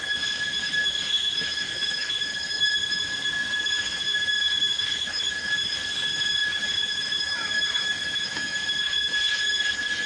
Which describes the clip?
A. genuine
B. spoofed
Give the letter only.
B